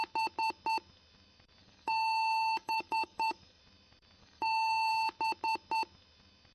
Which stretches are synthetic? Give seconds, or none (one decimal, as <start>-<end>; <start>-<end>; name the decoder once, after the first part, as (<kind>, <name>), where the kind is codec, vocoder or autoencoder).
1.6-3.6 (codec, DAC); 4.2-4.9